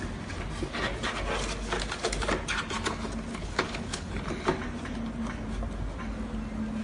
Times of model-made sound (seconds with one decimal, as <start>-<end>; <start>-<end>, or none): 3.3-4.1